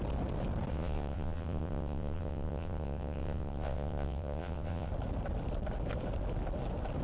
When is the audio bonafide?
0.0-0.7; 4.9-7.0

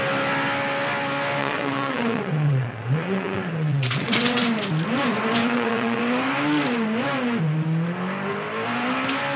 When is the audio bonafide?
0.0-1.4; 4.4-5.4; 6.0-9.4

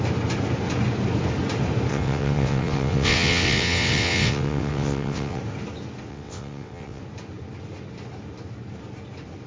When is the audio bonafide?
0.0-1.9; 5.4-6.1; 7.0-9.5

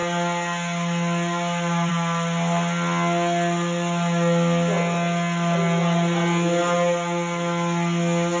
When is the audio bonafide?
0.0-8.4